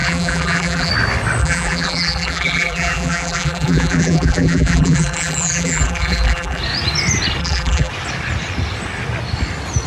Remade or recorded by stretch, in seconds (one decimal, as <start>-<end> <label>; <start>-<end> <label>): 0.0-0.9 remade; 0.9-1.4 recorded; 1.4-6.6 remade; 6.6-7.4 recorded; 7.4-7.9 remade; 7.9-9.9 recorded